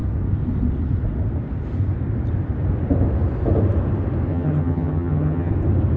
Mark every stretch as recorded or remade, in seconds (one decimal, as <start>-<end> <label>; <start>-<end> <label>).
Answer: 0.0-4.3 recorded; 4.3-5.5 remade; 5.5-6.0 recorded